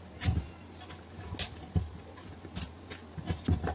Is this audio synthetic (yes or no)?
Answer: no